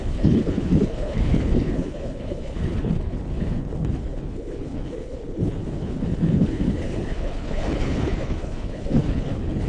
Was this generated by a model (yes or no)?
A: yes